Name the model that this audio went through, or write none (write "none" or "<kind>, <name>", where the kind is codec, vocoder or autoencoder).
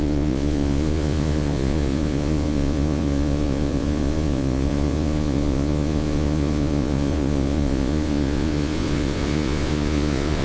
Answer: vocoder, Vocos